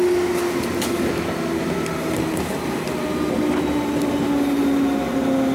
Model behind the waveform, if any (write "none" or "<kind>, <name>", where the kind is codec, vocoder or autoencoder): none